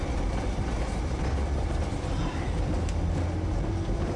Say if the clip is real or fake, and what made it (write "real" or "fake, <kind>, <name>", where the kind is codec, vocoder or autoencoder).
real